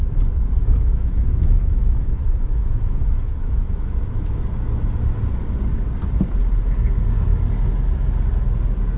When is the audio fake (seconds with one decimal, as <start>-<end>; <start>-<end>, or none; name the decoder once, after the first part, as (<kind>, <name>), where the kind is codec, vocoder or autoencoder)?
0.6-4.2 (autoencoder, DAC-VAE)